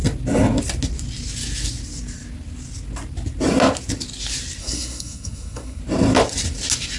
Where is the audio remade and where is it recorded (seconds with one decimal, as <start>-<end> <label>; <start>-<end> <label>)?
0.0-4.6 recorded; 4.6-5.8 remade; 5.8-7.0 recorded